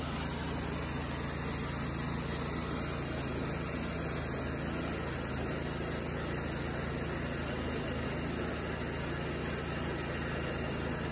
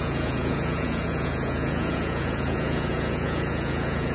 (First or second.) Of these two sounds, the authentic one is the first